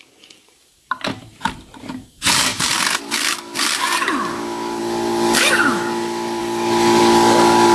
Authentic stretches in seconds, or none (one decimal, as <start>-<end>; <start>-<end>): 1.1-1.8